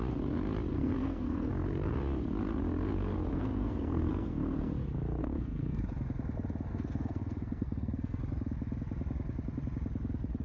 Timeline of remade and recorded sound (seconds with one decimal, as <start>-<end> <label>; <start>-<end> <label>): 0.0-0.7 recorded; 0.7-1.5 remade; 1.5-3.3 recorded; 3.3-4.7 remade; 4.7-5.2 recorded; 5.2-5.8 remade; 5.8-6.7 recorded; 6.7-8.2 remade; 8.2-10.4 recorded

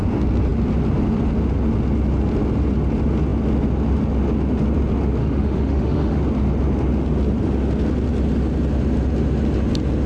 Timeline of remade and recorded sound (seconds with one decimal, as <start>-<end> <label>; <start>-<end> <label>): 0.0-5.2 recorded; 5.2-6.2 remade; 6.2-10.1 recorded

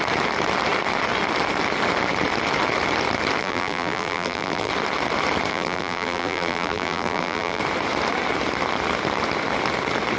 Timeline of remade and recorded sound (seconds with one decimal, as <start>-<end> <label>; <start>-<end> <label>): 0.0-3.4 recorded; 3.4-4.7 remade; 4.7-5.5 recorded; 5.5-7.6 remade; 7.6-10.2 recorded

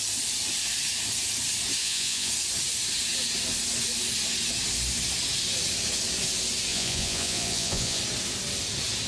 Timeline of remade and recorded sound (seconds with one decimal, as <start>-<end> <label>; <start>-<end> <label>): 0.0-1.8 recorded; 1.8-2.3 remade; 2.3-6.7 recorded; 6.7-8.0 remade; 8.0-9.1 recorded

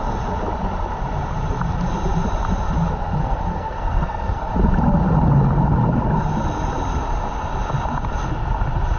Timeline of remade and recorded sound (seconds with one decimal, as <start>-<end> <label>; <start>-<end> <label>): 0.0-3.2 recorded; 3.2-4.5 remade; 4.5-9.0 recorded

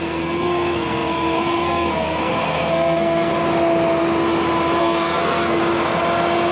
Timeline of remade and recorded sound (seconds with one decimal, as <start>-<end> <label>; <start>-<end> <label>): 0.0-3.3 remade; 3.3-4.8 recorded; 4.8-5.6 remade; 5.6-6.5 recorded

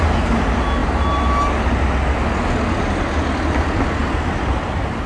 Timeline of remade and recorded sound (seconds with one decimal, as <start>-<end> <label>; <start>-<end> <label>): 0.0-5.1 recorded